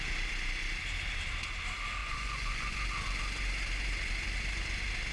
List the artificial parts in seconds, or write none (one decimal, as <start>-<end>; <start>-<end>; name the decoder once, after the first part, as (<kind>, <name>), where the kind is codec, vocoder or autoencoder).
2.0-2.7 (vocoder, Vocos)